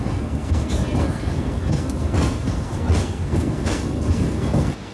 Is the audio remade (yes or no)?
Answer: yes